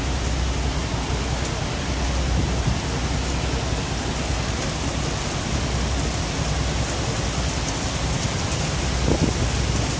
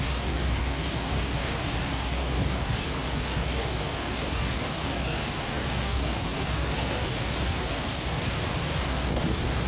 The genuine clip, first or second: first